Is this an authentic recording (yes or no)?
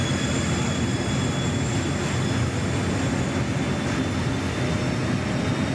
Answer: yes